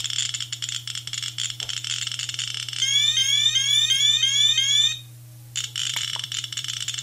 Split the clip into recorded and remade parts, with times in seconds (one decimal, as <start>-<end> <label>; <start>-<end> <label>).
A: 0.0-3.2 recorded; 3.2-4.0 remade; 4.0-5.8 recorded; 5.8-7.0 remade